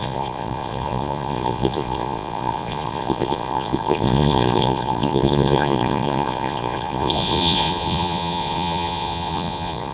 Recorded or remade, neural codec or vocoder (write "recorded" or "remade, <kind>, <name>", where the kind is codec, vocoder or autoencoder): remade, vocoder, Vocos